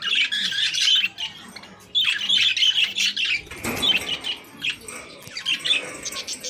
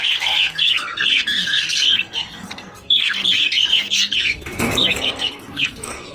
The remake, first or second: second